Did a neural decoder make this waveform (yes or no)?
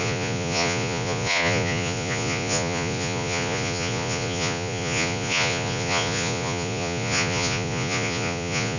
yes